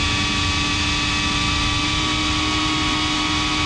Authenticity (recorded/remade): recorded